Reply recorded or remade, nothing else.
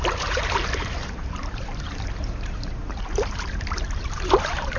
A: remade